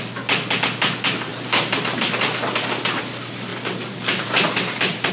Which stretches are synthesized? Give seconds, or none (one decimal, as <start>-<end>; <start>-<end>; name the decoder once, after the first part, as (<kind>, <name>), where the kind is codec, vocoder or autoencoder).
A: 1.3-3.0 (vocoder, BigVGAN v2); 3.5-5.1